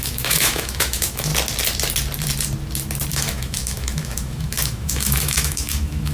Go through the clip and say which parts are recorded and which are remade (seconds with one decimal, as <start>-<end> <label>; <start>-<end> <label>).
0.0-1.3 remade; 1.3-3.1 recorded; 3.1-6.1 remade